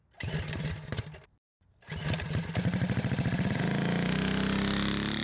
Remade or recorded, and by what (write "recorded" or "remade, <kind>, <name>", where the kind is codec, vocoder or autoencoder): recorded